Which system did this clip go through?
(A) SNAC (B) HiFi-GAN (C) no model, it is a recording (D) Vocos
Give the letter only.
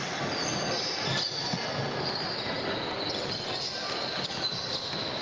C